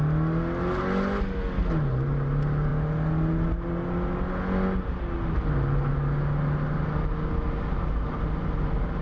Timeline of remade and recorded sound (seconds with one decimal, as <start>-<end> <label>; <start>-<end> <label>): 0.0-9.0 recorded